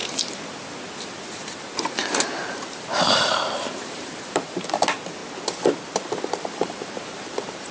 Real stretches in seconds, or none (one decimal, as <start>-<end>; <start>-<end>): 0.0-1.2; 5.2-6.6